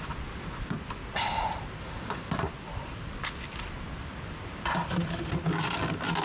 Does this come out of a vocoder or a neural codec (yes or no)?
no